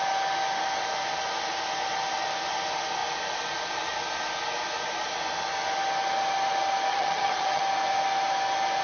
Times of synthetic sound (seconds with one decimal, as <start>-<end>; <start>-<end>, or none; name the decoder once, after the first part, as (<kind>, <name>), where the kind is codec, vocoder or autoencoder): 6.9-7.6 (vocoder, HiFi-GAN)